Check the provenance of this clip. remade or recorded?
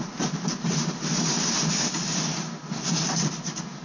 recorded